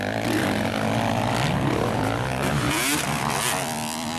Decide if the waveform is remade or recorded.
recorded